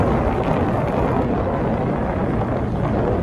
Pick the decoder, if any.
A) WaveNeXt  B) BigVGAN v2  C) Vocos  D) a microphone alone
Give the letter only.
D